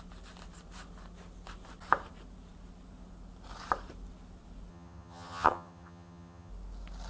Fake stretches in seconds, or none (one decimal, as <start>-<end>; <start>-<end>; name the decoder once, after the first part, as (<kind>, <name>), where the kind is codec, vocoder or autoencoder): 4.7-6.5 (vocoder, HiFi-GAN)